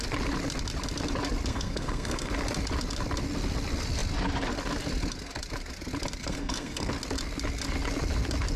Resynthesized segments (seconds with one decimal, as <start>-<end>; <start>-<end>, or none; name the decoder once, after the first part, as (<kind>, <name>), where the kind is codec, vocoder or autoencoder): 1.5-2.3 (codec, SNAC); 6.2-6.9